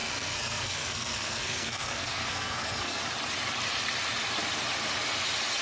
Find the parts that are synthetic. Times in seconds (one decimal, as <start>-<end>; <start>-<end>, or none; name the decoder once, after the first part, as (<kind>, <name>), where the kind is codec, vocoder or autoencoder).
0.0-3.0 (codec, SNAC)